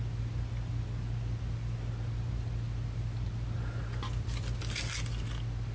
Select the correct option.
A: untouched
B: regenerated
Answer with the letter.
A